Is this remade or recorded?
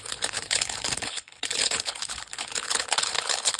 remade